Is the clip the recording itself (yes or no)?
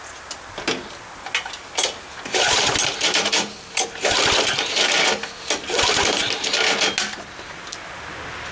yes